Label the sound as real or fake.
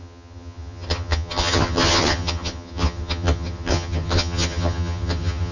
fake